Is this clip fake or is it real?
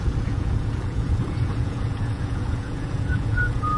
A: fake